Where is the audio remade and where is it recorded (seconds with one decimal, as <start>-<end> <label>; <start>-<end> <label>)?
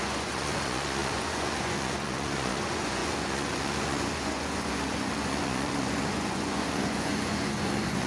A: 0.0-8.1 remade